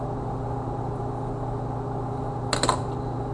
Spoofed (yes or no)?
no